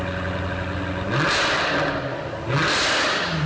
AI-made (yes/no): no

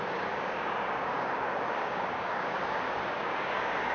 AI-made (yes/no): yes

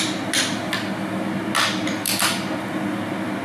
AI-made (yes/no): no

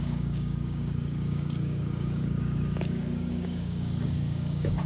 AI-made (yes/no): yes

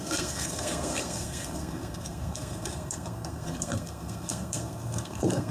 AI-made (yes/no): yes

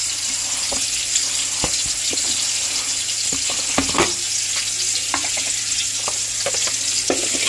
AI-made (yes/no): no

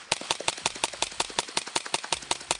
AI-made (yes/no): no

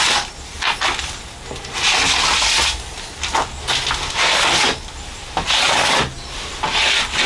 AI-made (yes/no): no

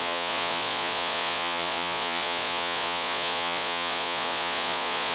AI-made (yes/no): yes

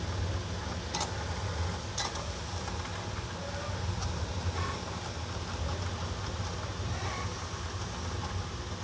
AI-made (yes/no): no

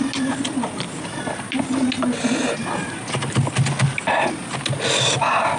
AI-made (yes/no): no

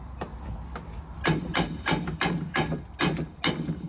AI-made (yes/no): no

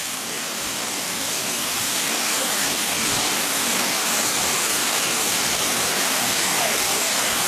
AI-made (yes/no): yes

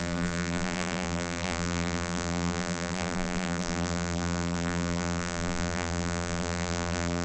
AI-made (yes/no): yes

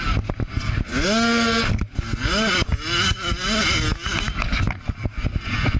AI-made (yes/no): no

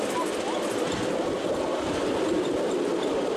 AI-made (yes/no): no